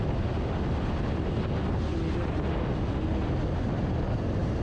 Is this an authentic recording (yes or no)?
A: yes